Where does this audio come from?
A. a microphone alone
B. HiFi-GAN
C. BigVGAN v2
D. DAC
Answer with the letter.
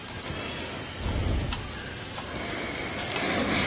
A